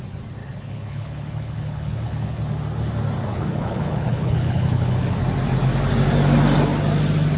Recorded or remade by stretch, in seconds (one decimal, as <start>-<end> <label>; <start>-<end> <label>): 0.0-0.4 recorded; 0.4-2.4 remade; 2.4-3.3 recorded; 3.3-5.2 remade; 5.2-7.4 recorded